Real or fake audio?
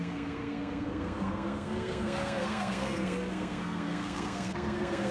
fake